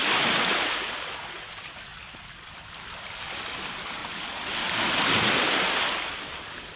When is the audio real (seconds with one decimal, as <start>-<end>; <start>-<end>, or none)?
0.0-6.8